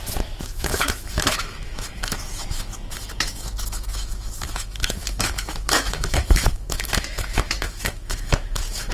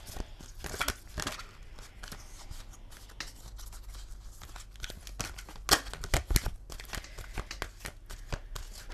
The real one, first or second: second